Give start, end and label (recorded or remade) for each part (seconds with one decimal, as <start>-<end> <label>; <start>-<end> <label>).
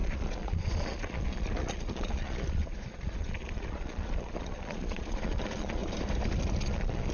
0.0-5.8 remade; 5.8-6.6 recorded; 6.6-7.1 remade